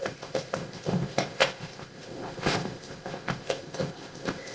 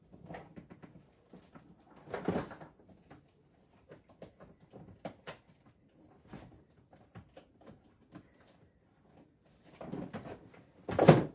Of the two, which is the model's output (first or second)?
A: first